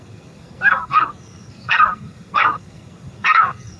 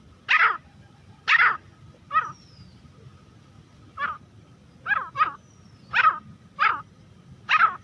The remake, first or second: first